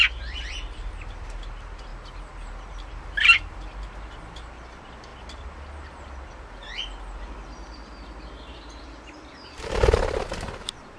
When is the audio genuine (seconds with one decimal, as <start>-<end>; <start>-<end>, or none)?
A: 1.9-2.7